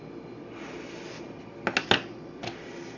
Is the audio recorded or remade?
recorded